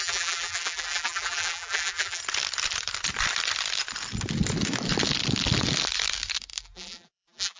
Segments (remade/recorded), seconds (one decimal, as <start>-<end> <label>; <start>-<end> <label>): 0.0-2.2 remade; 2.2-6.6 recorded; 6.6-7.6 remade